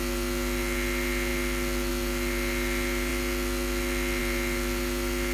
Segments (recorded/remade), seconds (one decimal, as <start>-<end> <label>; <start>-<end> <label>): 0.0-5.3 recorded